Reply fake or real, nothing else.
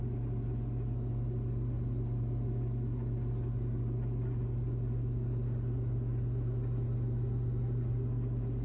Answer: real